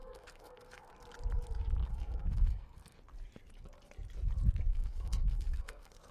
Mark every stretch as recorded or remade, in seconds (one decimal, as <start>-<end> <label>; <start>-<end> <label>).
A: 0.0-0.9 remade; 0.9-1.8 recorded; 1.8-3.0 remade; 3.0-4.7 recorded; 4.7-6.1 remade